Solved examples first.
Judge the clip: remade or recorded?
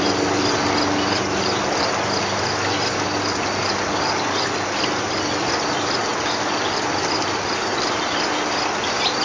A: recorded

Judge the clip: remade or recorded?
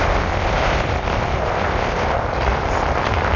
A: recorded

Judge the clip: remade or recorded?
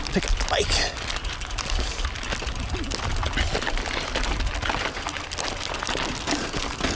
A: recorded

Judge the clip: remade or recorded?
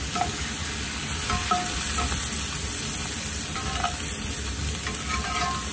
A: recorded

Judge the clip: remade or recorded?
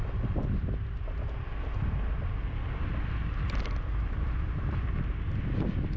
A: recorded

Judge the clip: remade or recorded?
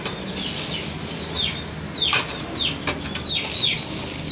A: recorded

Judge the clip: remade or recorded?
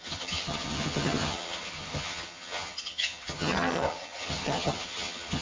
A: remade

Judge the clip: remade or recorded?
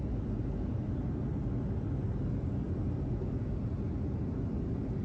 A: recorded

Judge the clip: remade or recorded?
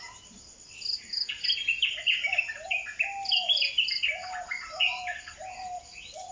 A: recorded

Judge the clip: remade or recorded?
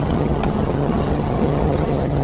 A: remade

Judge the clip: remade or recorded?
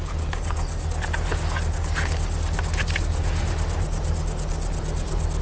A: recorded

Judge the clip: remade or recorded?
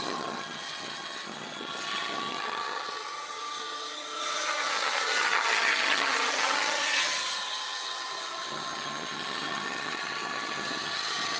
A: remade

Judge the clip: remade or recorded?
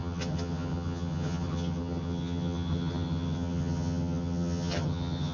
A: remade